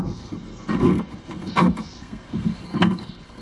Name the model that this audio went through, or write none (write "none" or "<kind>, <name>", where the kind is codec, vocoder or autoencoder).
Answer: codec, SNAC